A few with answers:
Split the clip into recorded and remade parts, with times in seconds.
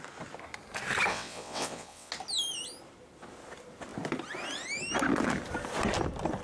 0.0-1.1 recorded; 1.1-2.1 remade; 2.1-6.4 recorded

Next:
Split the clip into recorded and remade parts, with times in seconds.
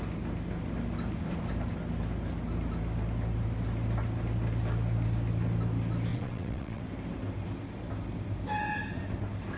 0.0-6.1 recorded; 6.1-6.8 remade; 6.8-9.6 recorded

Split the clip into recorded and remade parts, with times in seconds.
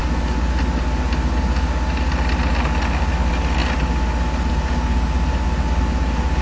0.0-6.4 recorded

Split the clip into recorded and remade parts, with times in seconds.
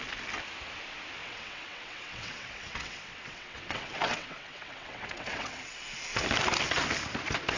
0.0-1.2 recorded; 1.2-5.8 remade; 5.8-7.6 recorded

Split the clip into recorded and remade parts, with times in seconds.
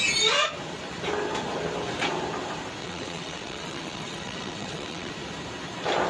0.0-2.8 recorded; 2.8-5.1 remade; 5.1-6.1 recorded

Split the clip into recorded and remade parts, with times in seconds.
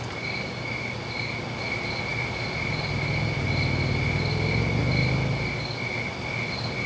0.0-6.9 recorded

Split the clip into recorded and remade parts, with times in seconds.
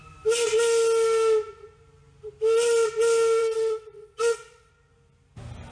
0.0-3.4 recorded; 3.4-4.7 remade; 4.7-5.7 recorded